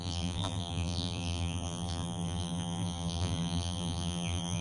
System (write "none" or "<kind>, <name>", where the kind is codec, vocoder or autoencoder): vocoder, BigVGAN v2